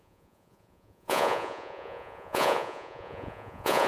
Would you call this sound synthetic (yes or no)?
yes